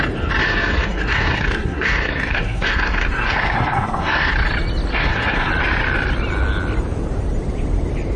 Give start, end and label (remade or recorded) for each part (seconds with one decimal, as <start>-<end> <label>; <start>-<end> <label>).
0.0-0.4 recorded; 0.4-4.3 remade; 4.3-4.9 recorded; 4.9-5.5 remade; 5.5-8.2 recorded